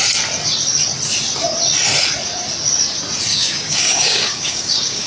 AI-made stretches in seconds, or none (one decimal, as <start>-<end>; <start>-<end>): 3.3-5.1